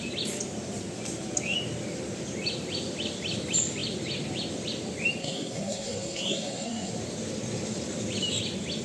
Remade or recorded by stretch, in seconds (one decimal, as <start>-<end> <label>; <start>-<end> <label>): 0.0-5.2 recorded; 5.2-6.9 remade; 6.9-8.8 recorded

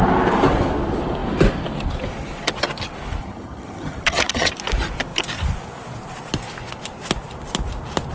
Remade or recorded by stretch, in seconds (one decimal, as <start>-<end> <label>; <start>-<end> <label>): 0.0-3.2 recorded; 3.2-4.5 remade; 4.5-8.1 recorded

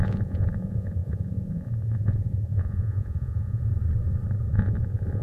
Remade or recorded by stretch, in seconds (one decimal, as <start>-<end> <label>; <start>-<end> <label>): 0.0-3.7 remade; 3.7-4.5 recorded; 4.5-5.2 remade